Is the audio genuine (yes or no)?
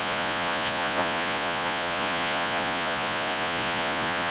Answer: no